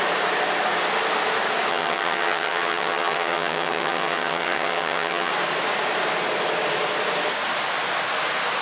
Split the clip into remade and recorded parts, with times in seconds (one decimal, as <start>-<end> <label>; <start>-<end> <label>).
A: 0.0-1.7 recorded; 1.7-5.3 remade; 5.3-8.6 recorded